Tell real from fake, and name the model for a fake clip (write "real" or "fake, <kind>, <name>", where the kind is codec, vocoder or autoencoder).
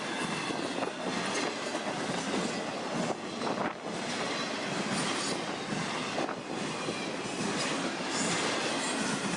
real